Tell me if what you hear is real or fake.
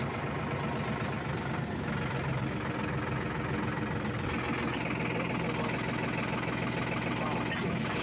real